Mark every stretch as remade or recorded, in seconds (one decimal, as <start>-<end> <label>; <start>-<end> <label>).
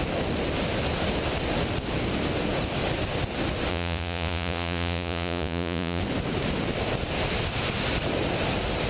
0.0-3.7 recorded; 3.7-6.0 remade; 6.0-8.9 recorded